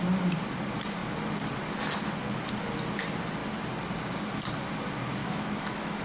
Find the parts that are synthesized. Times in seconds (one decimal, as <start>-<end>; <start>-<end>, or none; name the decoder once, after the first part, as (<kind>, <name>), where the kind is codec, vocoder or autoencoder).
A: 5.2-6.0 (autoencoder, DAC-VAE)